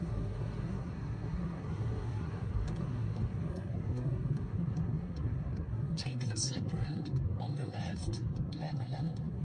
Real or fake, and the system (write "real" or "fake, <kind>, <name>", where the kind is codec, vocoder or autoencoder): fake, codec, SNAC